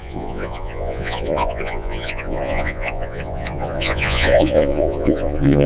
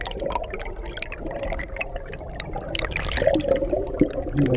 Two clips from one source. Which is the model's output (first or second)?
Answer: first